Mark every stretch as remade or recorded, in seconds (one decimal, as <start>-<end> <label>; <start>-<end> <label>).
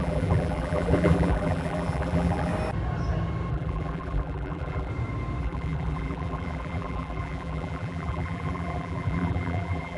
0.0-2.5 remade; 2.5-3.5 recorded; 3.5-4.9 remade; 4.9-5.4 recorded; 5.4-10.0 remade